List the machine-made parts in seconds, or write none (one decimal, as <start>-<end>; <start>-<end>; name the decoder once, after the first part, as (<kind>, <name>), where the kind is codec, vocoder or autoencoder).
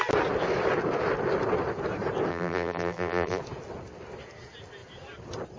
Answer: 2.3-3.4 (vocoder, BigVGAN v2)